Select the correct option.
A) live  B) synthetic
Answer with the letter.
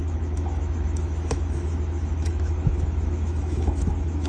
B